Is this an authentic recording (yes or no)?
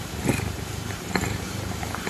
no